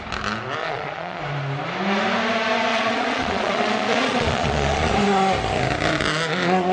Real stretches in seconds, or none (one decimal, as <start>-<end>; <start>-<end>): 0.0-0.6; 1.2-2.7; 4.9-6.7